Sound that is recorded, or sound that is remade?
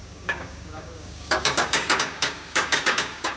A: remade